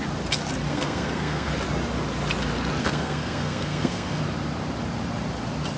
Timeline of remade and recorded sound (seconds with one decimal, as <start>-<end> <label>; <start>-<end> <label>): 0.0-0.7 recorded; 0.7-1.5 remade; 1.5-2.8 recorded; 2.8-4.2 remade; 4.2-5.8 recorded